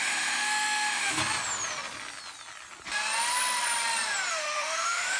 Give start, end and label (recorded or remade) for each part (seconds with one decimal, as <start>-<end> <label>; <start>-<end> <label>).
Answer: 0.0-1.2 remade; 1.2-4.3 recorded; 4.3-5.2 remade